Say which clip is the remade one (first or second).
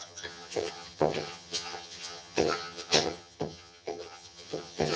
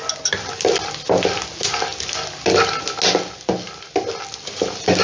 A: first